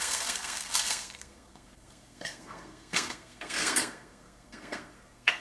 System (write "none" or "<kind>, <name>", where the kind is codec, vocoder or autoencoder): codec, SNAC